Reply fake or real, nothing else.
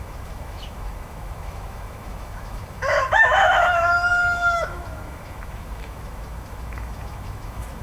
fake